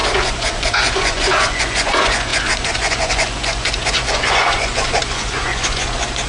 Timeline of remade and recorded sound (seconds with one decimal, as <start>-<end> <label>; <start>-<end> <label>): 0.0-6.3 remade